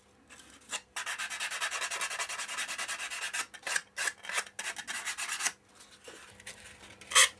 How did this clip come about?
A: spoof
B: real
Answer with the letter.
B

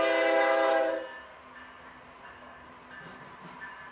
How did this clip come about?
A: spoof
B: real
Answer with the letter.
B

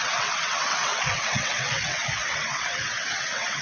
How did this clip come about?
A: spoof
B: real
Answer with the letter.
A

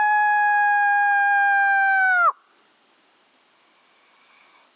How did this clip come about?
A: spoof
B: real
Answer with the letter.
B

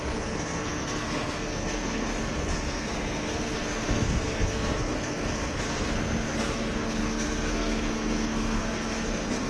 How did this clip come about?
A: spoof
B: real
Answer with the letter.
A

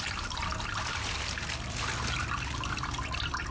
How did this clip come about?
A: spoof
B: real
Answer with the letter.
B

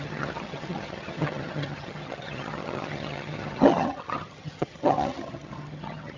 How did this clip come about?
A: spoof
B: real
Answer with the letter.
A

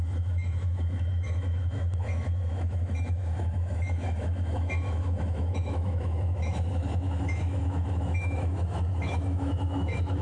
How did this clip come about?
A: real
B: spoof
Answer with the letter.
B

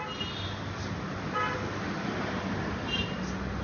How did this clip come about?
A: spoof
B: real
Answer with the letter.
B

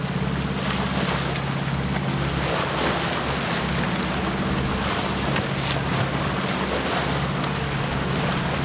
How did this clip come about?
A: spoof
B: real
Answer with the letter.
B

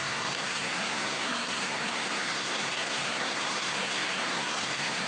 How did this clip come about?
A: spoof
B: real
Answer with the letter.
A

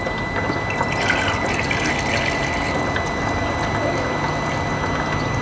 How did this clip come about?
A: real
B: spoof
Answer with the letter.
A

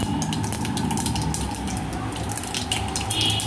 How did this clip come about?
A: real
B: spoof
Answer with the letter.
A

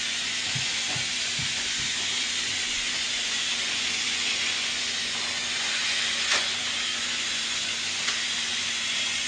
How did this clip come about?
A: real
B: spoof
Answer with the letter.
B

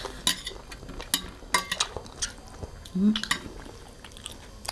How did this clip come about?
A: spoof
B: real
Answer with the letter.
B